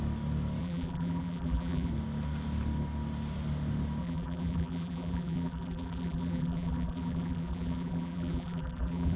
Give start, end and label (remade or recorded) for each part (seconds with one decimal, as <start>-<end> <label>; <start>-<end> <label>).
0.0-0.6 recorded; 0.6-1.9 remade; 1.9-4.0 recorded; 4.0-9.2 remade